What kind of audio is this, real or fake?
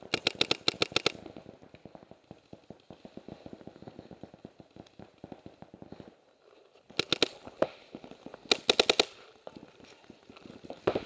real